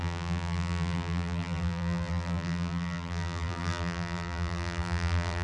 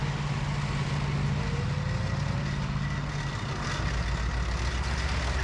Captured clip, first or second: second